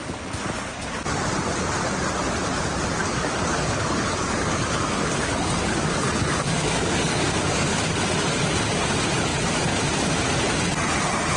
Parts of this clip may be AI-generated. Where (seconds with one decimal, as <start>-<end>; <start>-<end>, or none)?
3.0-8.1